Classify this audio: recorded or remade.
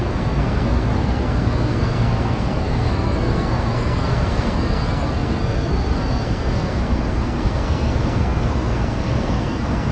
remade